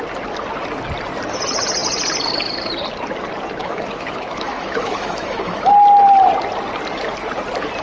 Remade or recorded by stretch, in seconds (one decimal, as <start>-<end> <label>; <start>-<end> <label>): 0.0-3.6 recorded; 3.6-5.7 remade; 5.7-7.8 recorded